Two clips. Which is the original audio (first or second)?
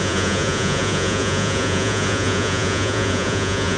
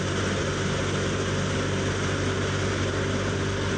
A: second